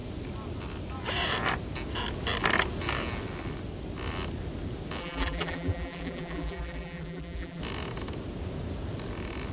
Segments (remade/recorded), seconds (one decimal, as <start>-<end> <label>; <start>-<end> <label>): 0.0-5.0 recorded; 5.0-7.6 remade; 7.6-9.5 recorded